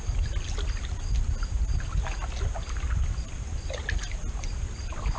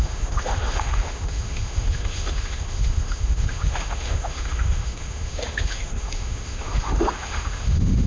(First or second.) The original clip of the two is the first